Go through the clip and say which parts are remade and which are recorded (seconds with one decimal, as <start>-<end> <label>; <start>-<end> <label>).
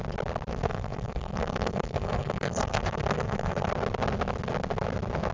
0.0-0.5 recorded; 0.5-3.7 remade; 3.7-5.3 recorded